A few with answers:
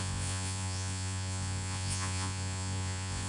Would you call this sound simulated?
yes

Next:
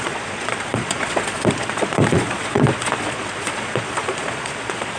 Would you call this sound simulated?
yes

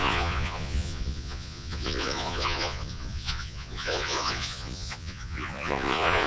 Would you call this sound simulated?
yes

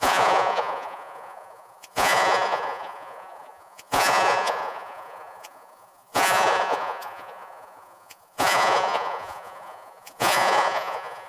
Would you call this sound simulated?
yes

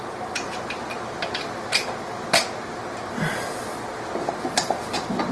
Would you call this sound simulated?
no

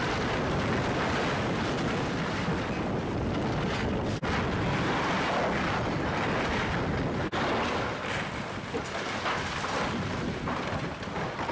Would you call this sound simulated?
no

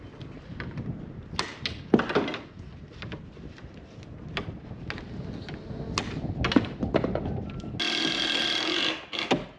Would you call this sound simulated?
no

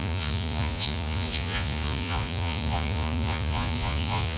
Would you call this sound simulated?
yes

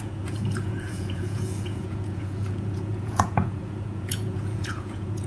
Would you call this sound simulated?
yes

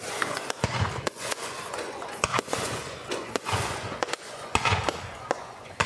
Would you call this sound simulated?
yes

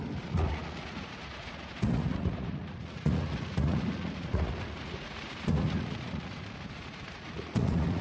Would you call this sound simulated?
yes